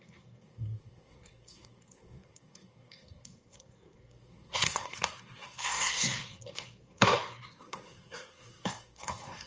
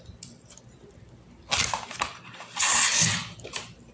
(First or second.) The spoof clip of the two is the first